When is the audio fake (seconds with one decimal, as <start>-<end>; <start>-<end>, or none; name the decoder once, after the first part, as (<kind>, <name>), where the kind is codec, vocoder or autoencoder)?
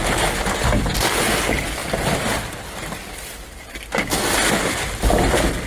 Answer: none